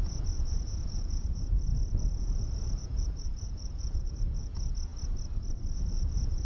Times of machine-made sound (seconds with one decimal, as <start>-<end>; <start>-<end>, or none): 0.0-4.9; 5.8-6.4